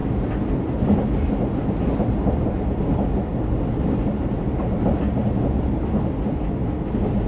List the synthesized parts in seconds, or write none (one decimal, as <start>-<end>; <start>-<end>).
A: none